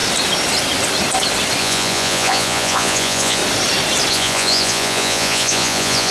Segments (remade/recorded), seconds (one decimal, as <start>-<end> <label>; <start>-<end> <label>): 0.0-1.6 recorded; 1.6-3.4 remade; 3.4-4.1 recorded; 4.1-6.1 remade